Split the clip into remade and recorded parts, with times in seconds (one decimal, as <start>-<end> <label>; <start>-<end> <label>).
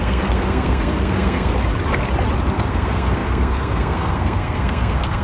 0.0-1.5 remade; 1.5-2.5 recorded; 2.5-5.2 remade